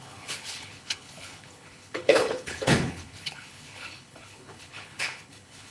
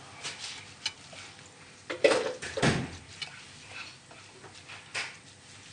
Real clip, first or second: second